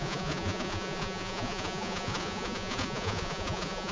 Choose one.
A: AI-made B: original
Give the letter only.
A